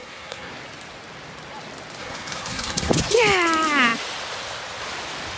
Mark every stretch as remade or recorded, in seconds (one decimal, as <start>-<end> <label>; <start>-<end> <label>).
0.0-0.5 remade; 0.5-2.0 recorded; 2.0-2.9 remade; 2.9-5.4 recorded